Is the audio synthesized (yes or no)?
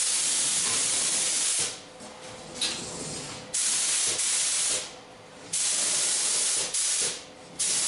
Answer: no